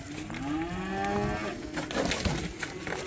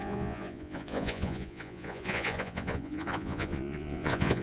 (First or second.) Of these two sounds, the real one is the first